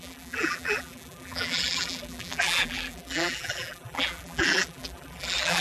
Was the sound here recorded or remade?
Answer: remade